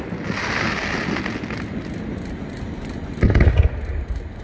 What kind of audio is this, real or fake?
real